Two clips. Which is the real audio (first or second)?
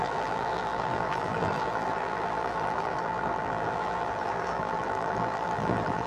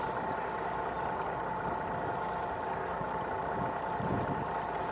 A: second